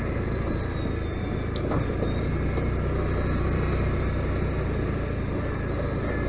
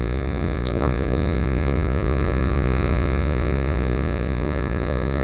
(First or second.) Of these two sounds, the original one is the first